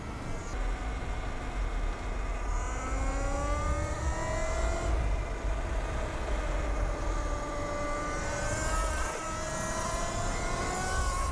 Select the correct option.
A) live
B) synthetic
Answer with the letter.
A